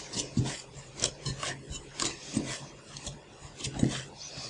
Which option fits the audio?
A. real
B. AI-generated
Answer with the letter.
A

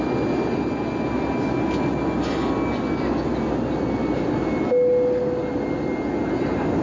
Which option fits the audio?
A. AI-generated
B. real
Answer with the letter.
B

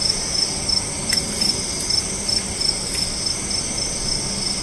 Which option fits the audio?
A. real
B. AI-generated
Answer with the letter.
A